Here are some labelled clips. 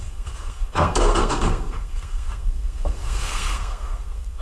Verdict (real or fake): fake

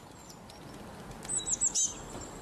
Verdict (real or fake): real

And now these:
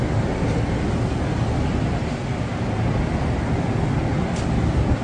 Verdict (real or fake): real